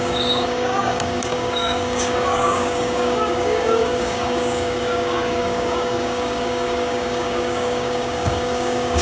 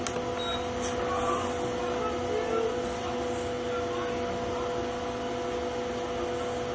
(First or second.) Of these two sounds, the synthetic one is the first